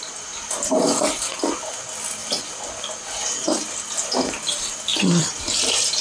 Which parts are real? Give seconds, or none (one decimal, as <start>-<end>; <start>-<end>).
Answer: 0.0-4.9; 5.6-6.0